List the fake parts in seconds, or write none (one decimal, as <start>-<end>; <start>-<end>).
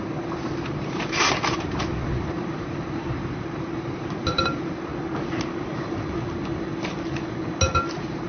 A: 0.0-4.9; 7.9-8.3